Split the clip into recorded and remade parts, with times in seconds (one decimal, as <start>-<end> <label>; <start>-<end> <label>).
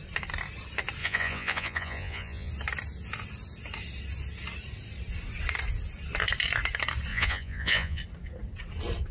0.0-1.0 recorded; 1.0-2.5 remade; 2.5-7.1 recorded; 7.1-8.0 remade; 8.0-9.1 recorded